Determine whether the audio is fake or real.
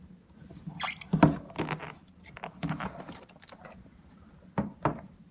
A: real